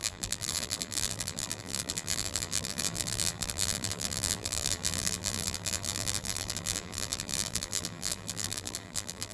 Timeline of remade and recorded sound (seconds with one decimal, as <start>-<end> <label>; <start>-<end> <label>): 0.0-9.3 remade